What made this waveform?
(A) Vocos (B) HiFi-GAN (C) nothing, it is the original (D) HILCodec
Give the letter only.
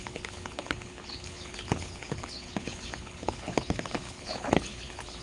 D